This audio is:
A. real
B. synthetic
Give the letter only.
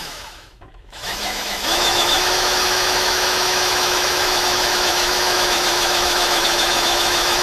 B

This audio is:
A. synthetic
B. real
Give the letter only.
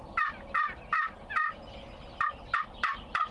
B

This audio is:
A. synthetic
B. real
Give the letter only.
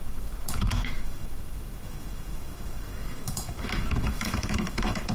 A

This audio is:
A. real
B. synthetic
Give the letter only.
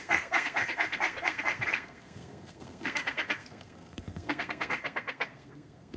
B